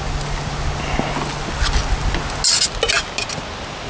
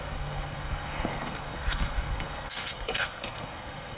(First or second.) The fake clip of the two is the second